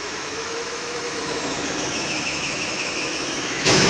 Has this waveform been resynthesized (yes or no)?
yes